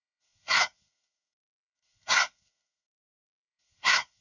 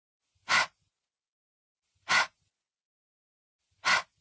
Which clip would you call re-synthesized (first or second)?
first